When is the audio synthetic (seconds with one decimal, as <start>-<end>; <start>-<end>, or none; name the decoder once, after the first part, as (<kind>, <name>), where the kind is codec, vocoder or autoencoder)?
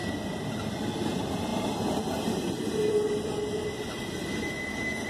none